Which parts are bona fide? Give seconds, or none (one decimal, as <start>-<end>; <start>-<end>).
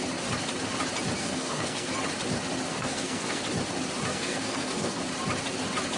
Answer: 0.0-1.2; 1.9-2.7; 3.4-4.1; 5.0-6.0